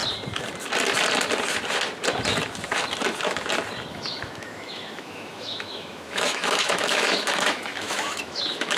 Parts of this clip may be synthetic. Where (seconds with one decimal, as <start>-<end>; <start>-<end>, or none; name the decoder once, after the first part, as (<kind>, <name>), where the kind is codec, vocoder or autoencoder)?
3.9-8.8 (autoencoder, DAC-VAE)